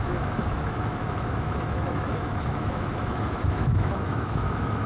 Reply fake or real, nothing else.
fake